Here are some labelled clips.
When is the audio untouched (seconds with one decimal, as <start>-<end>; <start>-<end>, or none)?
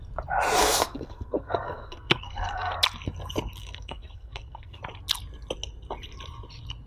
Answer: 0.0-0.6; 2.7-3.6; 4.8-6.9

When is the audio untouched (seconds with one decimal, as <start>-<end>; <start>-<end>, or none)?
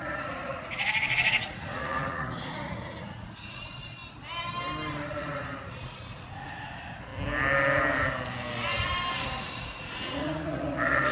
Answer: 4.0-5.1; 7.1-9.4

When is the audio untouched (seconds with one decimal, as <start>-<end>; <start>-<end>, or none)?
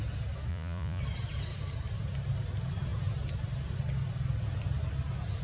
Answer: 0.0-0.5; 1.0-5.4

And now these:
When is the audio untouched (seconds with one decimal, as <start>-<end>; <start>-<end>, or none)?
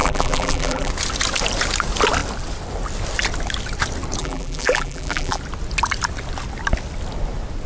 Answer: 0.9-4.2; 5.4-7.7